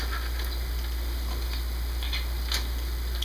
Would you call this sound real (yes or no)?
yes